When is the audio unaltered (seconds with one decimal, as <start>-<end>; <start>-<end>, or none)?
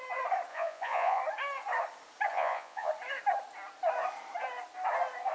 0.0-0.5; 1.2-2.3; 2.9-5.3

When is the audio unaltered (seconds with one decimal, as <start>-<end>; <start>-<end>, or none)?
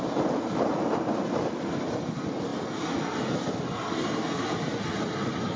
0.0-5.6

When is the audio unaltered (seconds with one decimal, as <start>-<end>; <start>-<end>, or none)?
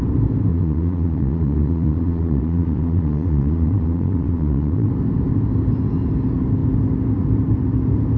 0.0-0.5; 4.9-8.2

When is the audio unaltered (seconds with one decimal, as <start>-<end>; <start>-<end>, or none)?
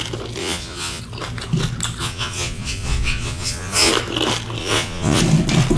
0.0-0.4; 1.0-2.0; 3.9-4.6; 5.2-5.8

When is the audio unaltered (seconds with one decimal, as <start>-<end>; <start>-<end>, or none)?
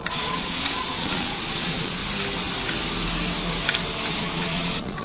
2.0-4.1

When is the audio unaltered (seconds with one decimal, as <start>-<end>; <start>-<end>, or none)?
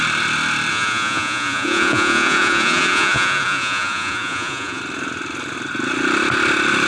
0.0-0.7; 4.8-6.9